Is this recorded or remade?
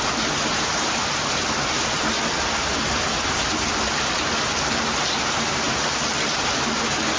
recorded